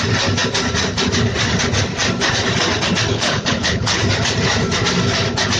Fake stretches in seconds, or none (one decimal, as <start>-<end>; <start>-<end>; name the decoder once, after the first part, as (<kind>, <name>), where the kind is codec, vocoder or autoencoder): 3.1-4.0 (codec, HILCodec)